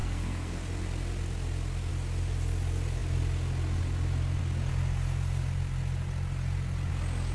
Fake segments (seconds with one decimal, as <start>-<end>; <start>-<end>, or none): 0.0-0.6